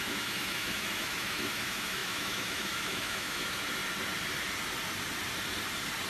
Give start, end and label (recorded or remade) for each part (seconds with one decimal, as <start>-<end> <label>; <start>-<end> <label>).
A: 0.0-3.8 remade; 3.8-6.1 recorded